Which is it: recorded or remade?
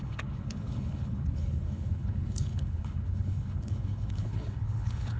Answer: remade